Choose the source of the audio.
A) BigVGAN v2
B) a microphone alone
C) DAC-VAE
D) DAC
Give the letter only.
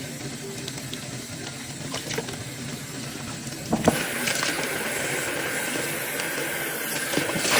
B